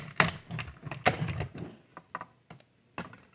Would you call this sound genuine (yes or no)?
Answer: yes